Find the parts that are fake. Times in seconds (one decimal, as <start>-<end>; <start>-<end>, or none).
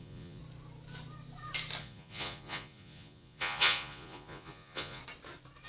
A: 0.0-0.4; 1.8-5.0